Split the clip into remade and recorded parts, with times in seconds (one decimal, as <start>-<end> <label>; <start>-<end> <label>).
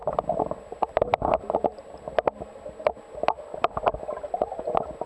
0.0-5.1 recorded